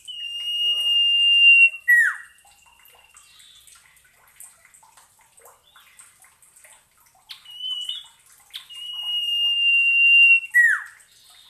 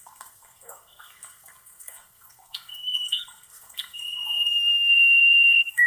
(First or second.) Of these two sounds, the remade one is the second